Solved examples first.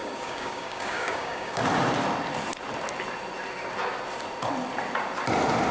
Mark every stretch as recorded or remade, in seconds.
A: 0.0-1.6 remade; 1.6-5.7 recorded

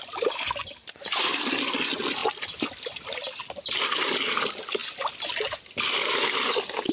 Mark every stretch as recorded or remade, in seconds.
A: 0.0-6.9 recorded